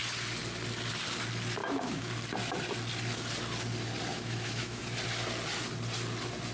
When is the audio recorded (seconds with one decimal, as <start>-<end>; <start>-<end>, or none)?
0.0-1.6; 2.1-4.1; 4.8-6.5